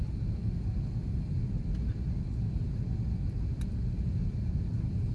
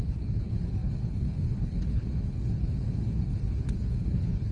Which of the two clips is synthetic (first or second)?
second